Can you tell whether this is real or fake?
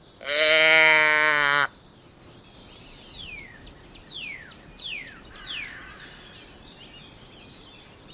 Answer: fake